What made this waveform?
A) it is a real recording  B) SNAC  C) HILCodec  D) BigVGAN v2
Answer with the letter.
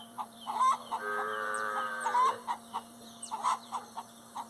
D